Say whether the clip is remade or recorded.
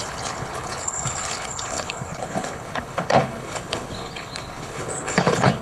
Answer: remade